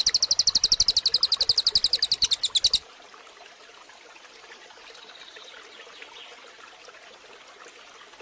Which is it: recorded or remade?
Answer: recorded